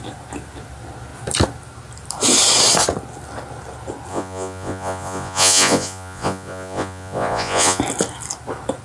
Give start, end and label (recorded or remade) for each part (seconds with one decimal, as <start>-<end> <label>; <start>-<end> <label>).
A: 0.0-4.1 recorded; 4.1-7.8 remade; 7.8-8.8 recorded